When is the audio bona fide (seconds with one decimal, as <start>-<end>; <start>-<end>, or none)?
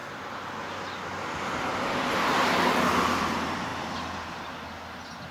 0.0-3.2; 3.7-5.3